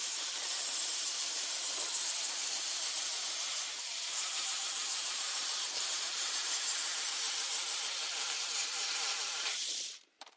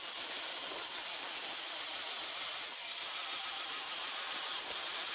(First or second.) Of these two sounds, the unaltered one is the second